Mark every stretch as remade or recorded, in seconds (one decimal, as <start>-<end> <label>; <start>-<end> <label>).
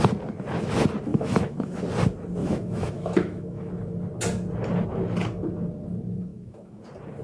0.0-1.1 recorded; 1.1-1.8 remade; 1.8-2.4 recorded; 2.4-3.7 remade; 3.7-6.3 recorded; 6.3-6.8 remade; 6.8-7.2 recorded